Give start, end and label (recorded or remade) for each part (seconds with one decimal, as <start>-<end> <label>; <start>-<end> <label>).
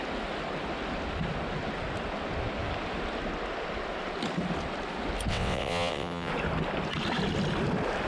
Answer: 0.0-5.3 recorded; 5.3-6.3 remade; 6.3-8.1 recorded